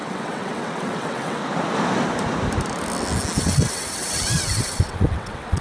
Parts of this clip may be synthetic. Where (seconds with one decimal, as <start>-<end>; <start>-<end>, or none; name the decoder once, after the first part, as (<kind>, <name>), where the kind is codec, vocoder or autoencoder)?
0.0-1.4 (vocoder, WaveNeXt); 3.4-5.6

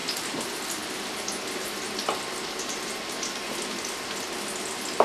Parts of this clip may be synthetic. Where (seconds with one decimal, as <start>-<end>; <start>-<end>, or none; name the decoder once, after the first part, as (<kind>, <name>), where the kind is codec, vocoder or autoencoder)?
none